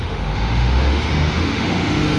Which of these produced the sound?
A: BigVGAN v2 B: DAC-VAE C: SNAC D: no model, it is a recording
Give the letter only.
B